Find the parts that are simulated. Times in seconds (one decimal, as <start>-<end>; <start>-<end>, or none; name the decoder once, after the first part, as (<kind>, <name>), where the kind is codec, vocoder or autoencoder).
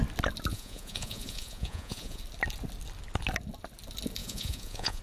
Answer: 0.5-2.2 (vocoder, Vocos); 4.2-5.0